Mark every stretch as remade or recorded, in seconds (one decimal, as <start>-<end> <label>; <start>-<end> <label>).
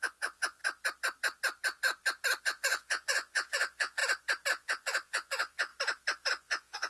0.0-0.6 remade; 0.6-2.4 recorded; 2.4-4.0 remade; 4.0-4.5 recorded; 4.5-5.7 remade; 5.7-6.3 recorded; 6.3-6.9 remade